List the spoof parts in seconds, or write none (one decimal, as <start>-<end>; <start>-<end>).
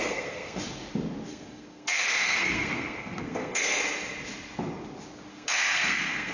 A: 0.0-0.6; 1.3-3.8; 5.3-6.3